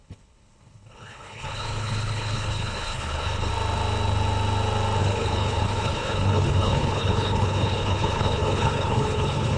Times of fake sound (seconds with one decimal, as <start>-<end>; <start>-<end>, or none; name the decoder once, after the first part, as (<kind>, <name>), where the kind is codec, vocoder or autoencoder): 0.0-3.5 (codec, HILCodec); 5.0-9.6

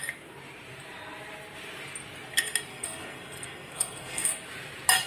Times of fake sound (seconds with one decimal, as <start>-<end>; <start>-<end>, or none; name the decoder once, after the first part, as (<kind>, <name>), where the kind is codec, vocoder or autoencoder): 2.7-4.4 (codec, SNAC)

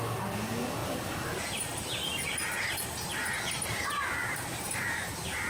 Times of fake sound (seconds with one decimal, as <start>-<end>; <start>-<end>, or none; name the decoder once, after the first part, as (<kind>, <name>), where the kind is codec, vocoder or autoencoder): 0.8-3.4 (vocoder, BigVGAN v2); 4.3-5.0